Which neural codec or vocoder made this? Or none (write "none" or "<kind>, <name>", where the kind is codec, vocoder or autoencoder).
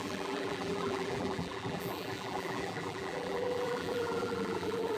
vocoder, BigVGAN v2